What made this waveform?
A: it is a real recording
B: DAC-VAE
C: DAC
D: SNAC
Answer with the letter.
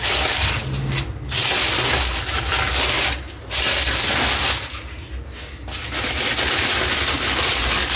A